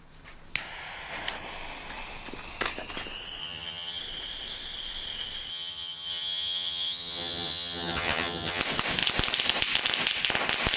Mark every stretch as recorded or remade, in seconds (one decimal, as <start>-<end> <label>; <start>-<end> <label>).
0.0-3.4 recorded; 3.4-4.0 remade; 4.0-5.5 recorded; 5.5-8.6 remade; 8.6-10.8 recorded